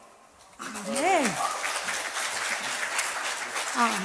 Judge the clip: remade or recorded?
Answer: recorded